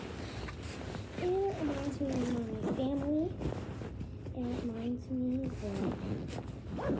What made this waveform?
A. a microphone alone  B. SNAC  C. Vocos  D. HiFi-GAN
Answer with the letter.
A